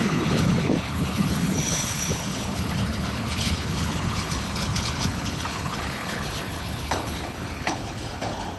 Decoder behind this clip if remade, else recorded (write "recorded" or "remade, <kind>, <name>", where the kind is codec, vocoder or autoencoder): remade, codec, HILCodec